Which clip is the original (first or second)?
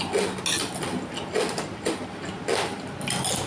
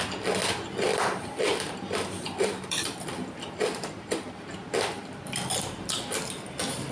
first